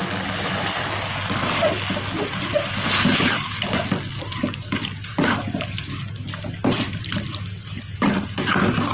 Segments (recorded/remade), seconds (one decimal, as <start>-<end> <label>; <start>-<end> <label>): 0.0-8.9 recorded